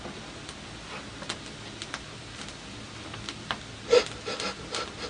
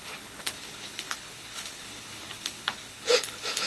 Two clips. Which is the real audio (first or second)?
first